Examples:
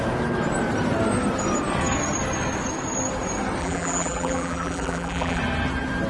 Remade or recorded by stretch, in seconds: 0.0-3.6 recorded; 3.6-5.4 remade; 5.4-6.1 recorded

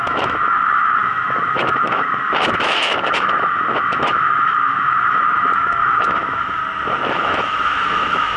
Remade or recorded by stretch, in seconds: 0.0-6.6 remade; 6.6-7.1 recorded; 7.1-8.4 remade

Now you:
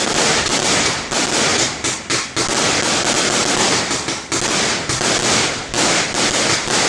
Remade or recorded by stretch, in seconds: 0.0-1.5 remade; 1.5-5.6 recorded; 5.6-6.9 remade

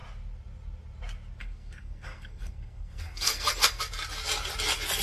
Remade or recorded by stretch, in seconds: 0.0-1.4 recorded; 1.4-3.8 remade; 3.8-5.0 recorded